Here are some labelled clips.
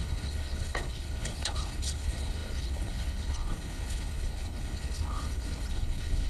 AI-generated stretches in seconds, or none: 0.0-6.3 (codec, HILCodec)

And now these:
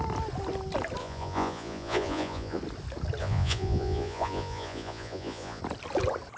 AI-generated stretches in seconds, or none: 1.0-2.6 (vocoder, Vocos); 3.2-5.6

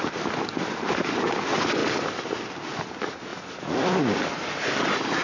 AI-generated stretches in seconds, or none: 1.8-2.9 (vocoder, BigVGAN v2); 3.3-3.9

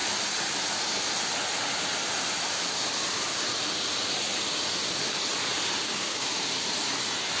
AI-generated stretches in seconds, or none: 5.8-6.3 (codec, DAC)

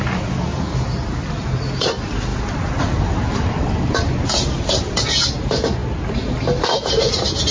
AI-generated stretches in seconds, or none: none